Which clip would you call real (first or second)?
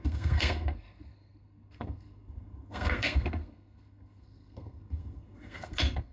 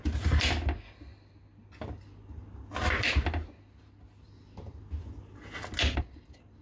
second